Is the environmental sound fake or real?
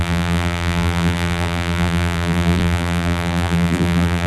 fake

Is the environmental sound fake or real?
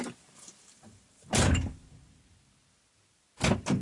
real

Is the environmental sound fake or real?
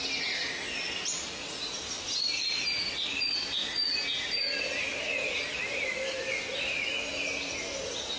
real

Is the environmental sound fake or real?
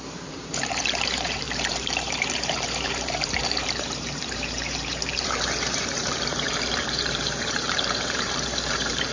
fake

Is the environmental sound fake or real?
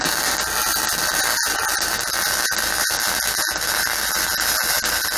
real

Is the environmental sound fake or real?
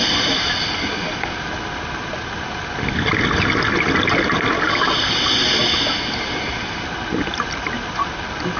real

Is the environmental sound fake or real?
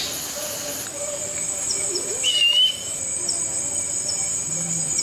real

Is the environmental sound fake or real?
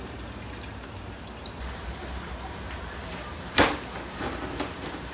fake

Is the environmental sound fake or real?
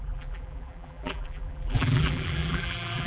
fake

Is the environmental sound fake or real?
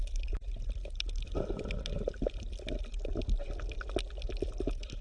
real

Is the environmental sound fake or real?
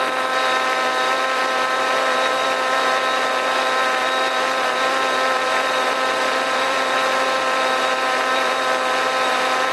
fake